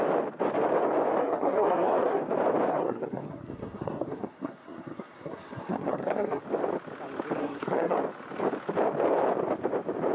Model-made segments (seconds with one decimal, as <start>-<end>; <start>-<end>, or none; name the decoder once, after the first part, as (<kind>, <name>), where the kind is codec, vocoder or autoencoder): 1.2-2.2 (codec, SNAC); 2.7-6.4; 7.4-8.0